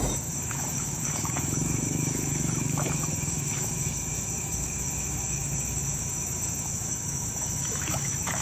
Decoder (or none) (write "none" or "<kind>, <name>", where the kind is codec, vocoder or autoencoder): autoencoder, DAC-VAE